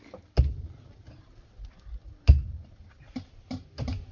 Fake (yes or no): no